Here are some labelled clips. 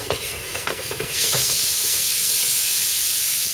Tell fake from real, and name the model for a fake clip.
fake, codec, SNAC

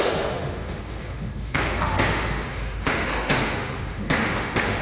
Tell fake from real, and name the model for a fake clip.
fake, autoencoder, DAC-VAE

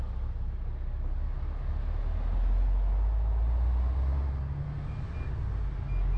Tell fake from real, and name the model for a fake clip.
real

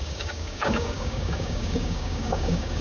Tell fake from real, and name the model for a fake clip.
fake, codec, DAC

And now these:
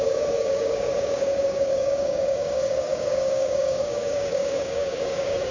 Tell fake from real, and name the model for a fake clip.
fake, codec, DAC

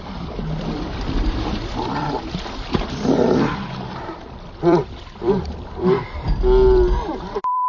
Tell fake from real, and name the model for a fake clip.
fake, vocoder, BigVGAN v2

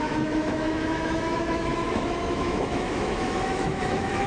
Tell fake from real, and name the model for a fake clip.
fake, autoencoder, DAC-VAE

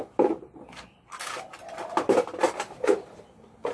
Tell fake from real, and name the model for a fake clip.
real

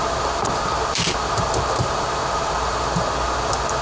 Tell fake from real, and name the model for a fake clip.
real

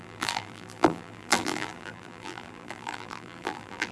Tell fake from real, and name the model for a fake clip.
fake, vocoder, BigVGAN v2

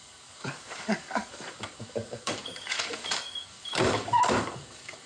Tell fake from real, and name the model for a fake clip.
fake, codec, DAC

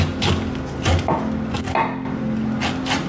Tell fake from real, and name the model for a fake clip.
real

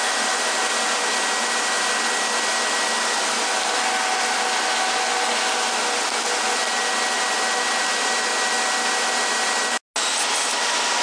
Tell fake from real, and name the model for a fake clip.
real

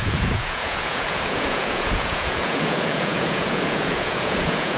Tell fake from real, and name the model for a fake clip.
fake, vocoder, Vocos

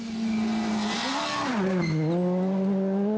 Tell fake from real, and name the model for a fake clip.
real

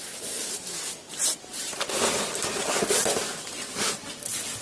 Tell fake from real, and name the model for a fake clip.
real